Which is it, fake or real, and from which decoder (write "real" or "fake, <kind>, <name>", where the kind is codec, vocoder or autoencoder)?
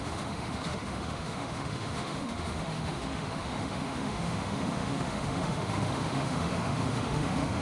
fake, autoencoder, DAC-VAE